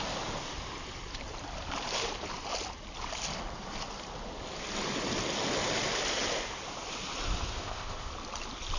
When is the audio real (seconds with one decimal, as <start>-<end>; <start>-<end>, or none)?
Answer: 0.0-7.6; 8.1-8.8